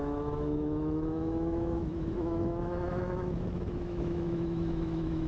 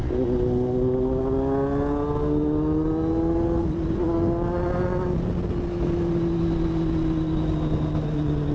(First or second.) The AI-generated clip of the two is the first